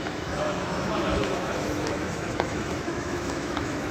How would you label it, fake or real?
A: fake